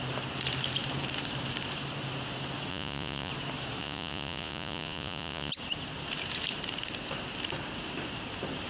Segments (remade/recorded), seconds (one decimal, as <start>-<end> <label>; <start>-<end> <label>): 0.0-2.7 recorded; 2.7-3.3 remade; 3.3-3.8 recorded; 3.8-5.5 remade; 5.5-8.7 recorded